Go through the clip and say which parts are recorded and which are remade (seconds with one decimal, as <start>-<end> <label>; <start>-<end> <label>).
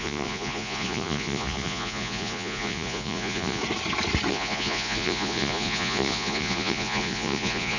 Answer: 0.0-3.6 remade; 3.6-4.3 recorded; 4.3-7.8 remade